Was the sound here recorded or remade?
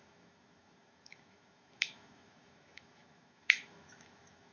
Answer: remade